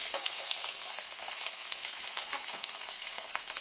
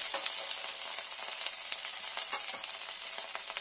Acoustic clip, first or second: second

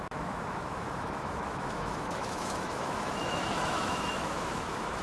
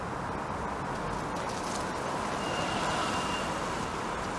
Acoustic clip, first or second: second